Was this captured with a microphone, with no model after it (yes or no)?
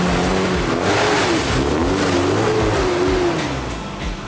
yes